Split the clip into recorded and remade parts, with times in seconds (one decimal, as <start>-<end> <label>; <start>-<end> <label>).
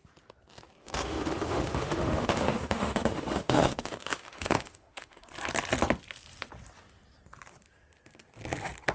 0.0-0.8 recorded; 0.8-5.2 remade; 5.2-8.9 recorded